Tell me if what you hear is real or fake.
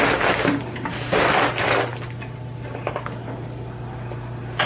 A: real